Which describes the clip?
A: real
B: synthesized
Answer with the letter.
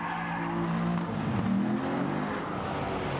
A